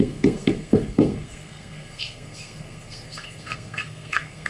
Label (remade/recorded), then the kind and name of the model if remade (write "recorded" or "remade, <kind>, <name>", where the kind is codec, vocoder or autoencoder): remade, codec, SNAC